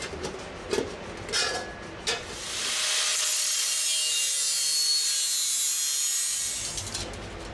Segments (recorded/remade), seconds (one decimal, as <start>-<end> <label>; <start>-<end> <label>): 0.0-7.5 recorded